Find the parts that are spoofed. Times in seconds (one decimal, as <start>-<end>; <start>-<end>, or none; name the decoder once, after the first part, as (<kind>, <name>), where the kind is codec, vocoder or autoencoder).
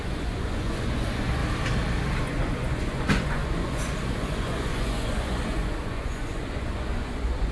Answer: 0.0-1.4 (vocoder, Vocos); 2.2-7.5